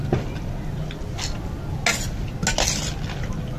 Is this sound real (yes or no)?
yes